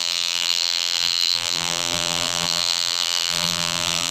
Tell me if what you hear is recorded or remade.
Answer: remade